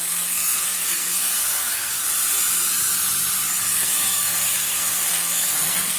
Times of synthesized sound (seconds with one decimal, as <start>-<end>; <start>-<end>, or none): 0.0-2.0; 3.7-6.0